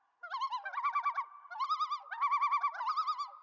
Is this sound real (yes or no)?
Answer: yes